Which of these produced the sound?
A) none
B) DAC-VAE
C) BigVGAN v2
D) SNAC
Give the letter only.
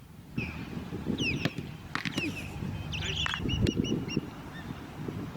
A